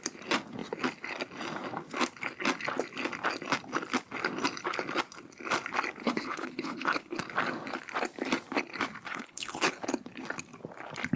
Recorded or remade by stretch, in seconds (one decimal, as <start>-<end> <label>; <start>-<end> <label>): 0.0-6.0 recorded; 6.0-7.2 remade; 7.2-9.1 recorded; 9.1-9.8 remade; 9.8-11.2 recorded